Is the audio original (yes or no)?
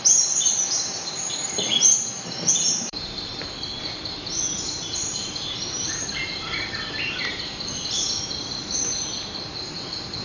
no